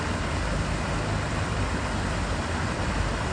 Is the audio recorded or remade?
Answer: recorded